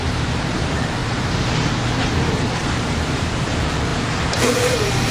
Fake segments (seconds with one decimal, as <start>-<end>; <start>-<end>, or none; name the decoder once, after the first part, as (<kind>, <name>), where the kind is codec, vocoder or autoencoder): 0.0-1.0 (vocoder, BigVGAN v2); 3.3-3.9; 4.5-5.1